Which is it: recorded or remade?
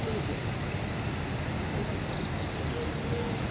recorded